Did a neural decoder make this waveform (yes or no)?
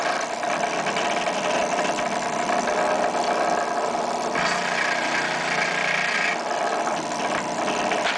no